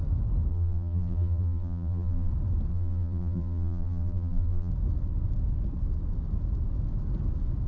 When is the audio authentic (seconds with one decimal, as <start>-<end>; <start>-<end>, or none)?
0.0-0.5; 2.3-2.7; 4.7-7.7